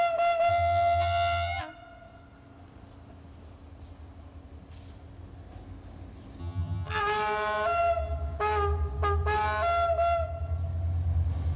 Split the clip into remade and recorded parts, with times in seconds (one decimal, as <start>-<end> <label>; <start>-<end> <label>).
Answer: 0.0-0.5 recorded; 0.5-1.6 remade; 1.6-6.4 recorded; 6.4-7.0 remade; 7.0-11.6 recorded